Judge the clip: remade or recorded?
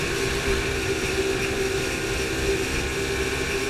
recorded